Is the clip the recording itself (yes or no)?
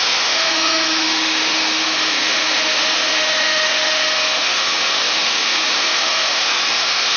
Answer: no